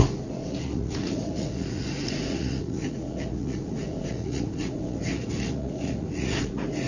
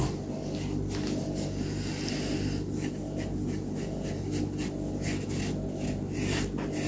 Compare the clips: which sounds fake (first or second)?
first